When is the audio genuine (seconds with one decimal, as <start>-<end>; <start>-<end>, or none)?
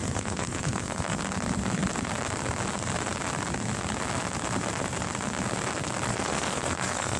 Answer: 1.2-6.1